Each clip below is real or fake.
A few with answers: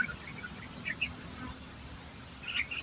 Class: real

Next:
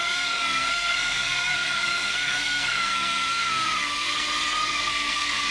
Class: fake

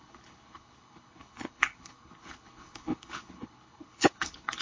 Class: fake